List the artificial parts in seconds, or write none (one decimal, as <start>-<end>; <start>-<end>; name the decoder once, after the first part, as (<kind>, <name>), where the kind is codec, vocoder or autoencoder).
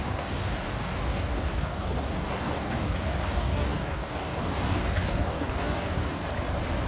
0.0-6.2 (codec, DAC)